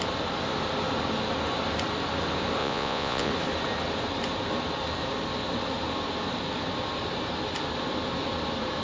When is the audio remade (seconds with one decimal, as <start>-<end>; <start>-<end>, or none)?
2.6-3.3